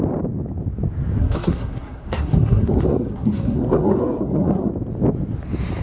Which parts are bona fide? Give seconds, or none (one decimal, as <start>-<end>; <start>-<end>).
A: 0.0-1.2; 4.7-5.8

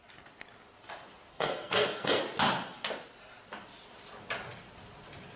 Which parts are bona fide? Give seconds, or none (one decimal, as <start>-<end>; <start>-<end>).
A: 0.0-1.3; 2.2-5.4

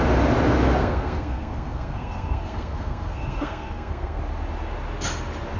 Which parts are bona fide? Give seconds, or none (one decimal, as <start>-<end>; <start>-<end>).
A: 0.0-0.8; 4.2-5.6

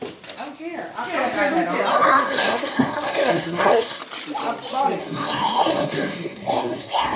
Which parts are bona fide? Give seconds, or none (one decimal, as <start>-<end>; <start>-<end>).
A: 0.0-1.9; 4.0-5.0

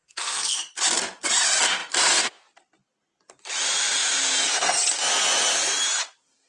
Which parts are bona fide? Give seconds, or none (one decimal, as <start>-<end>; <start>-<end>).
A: 0.7-6.5